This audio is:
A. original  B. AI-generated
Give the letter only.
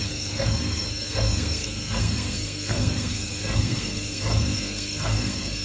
B